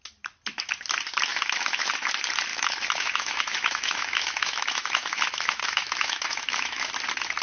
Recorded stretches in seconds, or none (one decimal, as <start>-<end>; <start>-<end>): 0.0-1.3; 1.9-2.5; 6.9-7.4